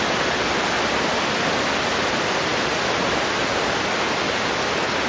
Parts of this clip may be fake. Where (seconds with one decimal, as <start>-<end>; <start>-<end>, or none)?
none